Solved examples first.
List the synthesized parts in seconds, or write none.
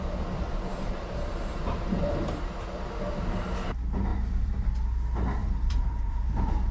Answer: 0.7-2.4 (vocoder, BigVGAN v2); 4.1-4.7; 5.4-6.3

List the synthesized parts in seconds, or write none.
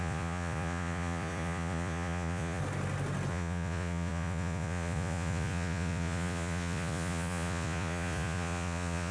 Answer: 0.0-2.6 (vocoder, Vocos); 3.3-9.1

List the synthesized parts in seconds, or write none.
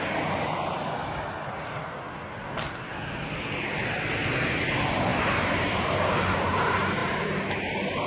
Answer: none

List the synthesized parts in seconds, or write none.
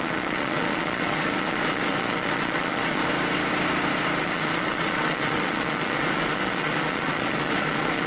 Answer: 0.0-3.0 (vocoder, Vocos); 4.2-8.1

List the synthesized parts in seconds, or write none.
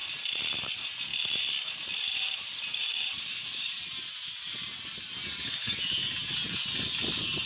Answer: 0.6-1.1 (vocoder, BigVGAN v2); 2.0-7.5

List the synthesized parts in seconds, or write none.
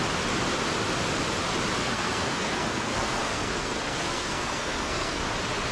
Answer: 1.8-5.2 (codec, SNAC)